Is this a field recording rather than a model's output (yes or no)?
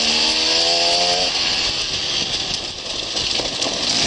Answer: yes